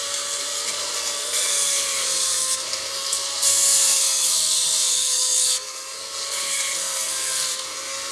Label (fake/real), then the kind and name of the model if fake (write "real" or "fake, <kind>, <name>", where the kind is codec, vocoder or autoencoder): fake, codec, SNAC